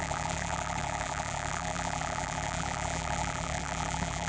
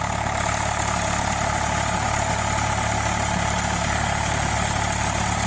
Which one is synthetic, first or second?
first